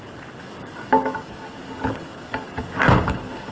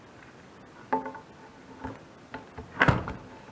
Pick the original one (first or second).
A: second